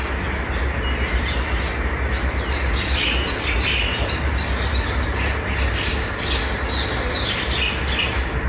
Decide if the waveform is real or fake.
real